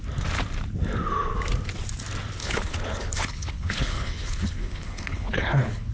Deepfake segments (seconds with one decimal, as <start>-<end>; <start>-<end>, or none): 2.4-5.9